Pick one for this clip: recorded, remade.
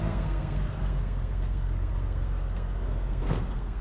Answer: remade